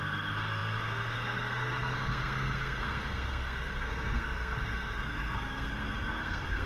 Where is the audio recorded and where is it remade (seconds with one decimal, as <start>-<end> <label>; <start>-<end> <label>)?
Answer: 0.0-6.7 remade